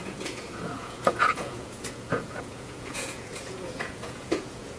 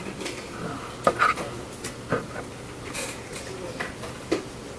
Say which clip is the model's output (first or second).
first